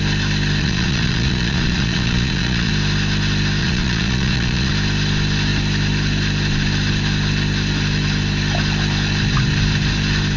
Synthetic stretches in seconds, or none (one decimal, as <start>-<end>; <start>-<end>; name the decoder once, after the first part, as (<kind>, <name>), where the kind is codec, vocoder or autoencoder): 0.6-2.7 (vocoder, Vocos); 3.6-4.7